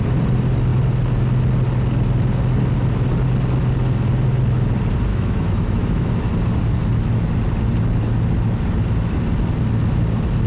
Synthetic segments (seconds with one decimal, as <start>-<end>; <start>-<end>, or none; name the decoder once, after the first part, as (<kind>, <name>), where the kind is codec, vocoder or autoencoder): 5.1-6.3 (autoencoder, DAC-VAE)